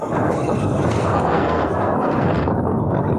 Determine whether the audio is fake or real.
fake